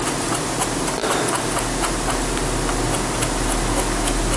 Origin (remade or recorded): recorded